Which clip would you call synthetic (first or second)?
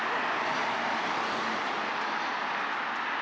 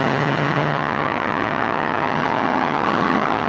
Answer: second